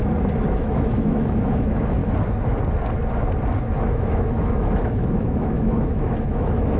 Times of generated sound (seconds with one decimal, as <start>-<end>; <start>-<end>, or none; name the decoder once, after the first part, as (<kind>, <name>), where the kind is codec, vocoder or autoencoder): 0.6-2.0 (autoencoder, DAC-VAE); 3.8-6.8